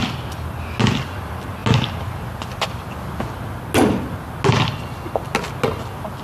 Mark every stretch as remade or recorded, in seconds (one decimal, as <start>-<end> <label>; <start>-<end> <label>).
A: 0.0-6.2 recorded